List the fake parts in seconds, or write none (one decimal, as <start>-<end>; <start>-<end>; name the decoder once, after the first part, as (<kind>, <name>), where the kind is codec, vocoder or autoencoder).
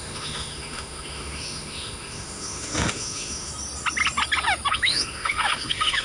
0.0-3.5 (autoencoder, DAC-VAE); 4.7-6.0